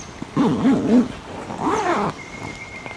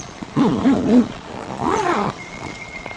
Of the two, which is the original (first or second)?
first